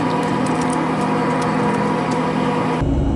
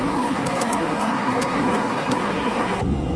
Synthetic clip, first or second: second